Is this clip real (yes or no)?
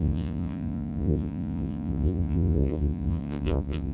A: no